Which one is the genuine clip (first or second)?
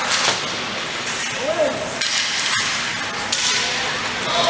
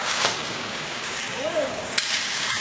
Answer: first